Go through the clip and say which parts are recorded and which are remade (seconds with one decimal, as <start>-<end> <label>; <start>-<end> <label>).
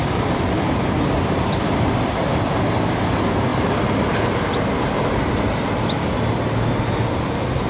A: 0.0-2.2 remade; 2.2-7.7 recorded